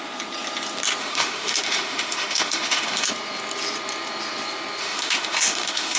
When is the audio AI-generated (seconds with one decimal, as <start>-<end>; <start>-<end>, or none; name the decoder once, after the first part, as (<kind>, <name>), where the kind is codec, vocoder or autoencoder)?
1.0-3.1 (autoencoder, DAC-VAE); 4.8-6.0

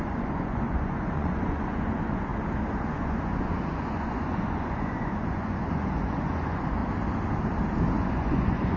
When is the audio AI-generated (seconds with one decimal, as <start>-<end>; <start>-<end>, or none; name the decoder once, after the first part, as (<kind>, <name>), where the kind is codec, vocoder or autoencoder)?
0.0-2.3 (vocoder, Vocos); 2.9-6.8; 7.9-8.8

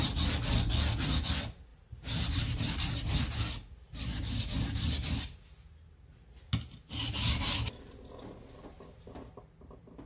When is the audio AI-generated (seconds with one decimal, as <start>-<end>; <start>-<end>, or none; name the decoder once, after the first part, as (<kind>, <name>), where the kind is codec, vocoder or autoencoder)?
1.7-2.6 (vocoder, BigVGAN v2)

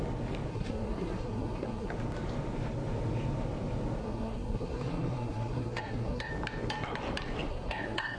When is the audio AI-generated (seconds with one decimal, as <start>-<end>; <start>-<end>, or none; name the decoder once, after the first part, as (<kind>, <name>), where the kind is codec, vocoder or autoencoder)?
0.5-1.9 (codec, SNAC); 4.0-6.3; 7.5-8.2

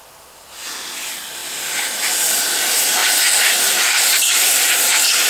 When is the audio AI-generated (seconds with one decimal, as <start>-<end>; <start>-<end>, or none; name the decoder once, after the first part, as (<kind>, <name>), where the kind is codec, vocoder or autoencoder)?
1.4-2.6 (vocoder, BigVGAN v2)

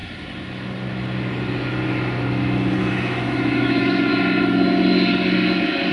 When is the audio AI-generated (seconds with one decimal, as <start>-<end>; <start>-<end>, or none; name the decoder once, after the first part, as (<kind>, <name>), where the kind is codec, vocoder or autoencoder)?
2.8-4.1 (autoencoder, DAC-VAE)

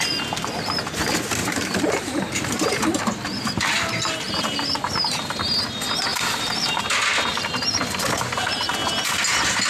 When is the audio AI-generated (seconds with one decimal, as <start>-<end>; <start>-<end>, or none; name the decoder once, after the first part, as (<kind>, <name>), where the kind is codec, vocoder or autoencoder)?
1.4-4.9 (vocoder, BigVGAN v2); 6.1-6.8